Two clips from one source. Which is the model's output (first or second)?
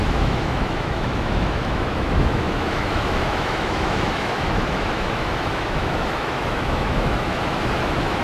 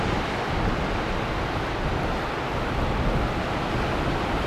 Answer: first